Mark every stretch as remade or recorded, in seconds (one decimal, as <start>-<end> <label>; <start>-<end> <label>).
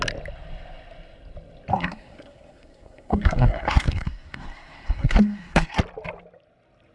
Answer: 0.0-1.7 recorded; 1.7-5.8 remade; 5.8-6.9 recorded